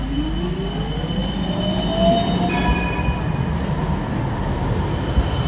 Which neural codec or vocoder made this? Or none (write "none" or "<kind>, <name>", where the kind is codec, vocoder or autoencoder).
none